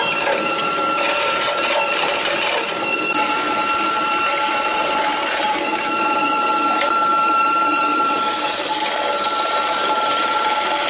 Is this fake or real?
fake